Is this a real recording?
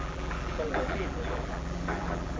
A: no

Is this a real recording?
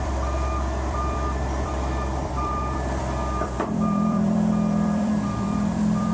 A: no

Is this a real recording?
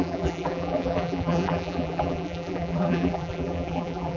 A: no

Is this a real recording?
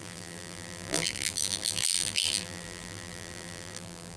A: no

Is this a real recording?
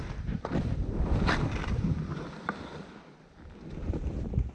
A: no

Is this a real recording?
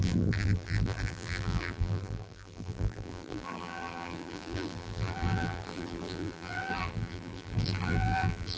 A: no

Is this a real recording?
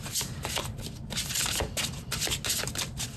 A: yes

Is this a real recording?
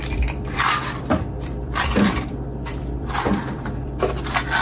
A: no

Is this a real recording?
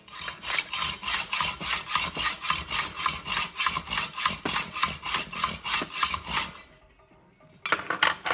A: yes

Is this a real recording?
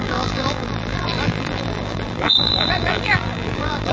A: no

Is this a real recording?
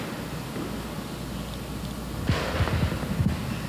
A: yes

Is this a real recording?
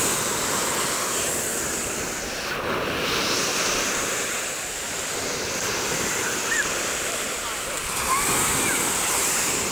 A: no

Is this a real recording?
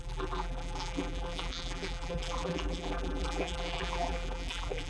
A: no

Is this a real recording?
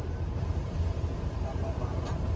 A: no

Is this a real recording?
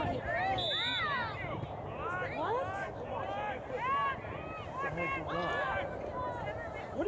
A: yes